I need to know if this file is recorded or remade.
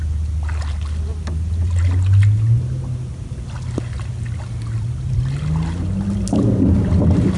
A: recorded